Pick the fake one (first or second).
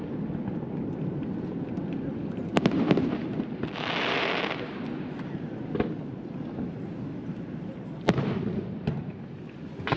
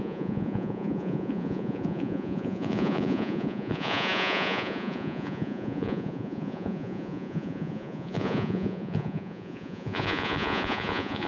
second